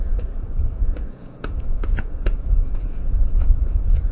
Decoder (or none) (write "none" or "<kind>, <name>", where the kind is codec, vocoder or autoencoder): vocoder, Vocos